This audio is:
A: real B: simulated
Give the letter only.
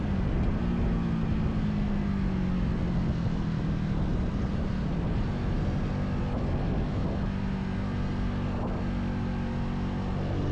A